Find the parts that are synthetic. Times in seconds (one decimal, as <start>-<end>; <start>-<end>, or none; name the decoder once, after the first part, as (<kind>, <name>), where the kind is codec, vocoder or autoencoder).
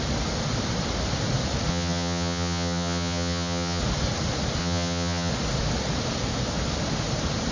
1.7-3.8 (vocoder, HiFi-GAN); 4.6-5.3